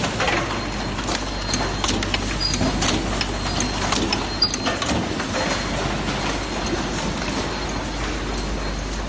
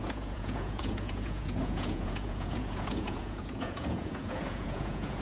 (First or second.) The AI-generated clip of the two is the second